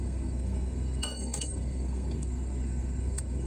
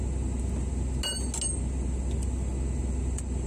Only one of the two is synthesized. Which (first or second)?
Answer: first